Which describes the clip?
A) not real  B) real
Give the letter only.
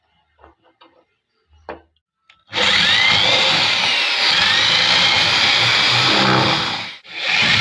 B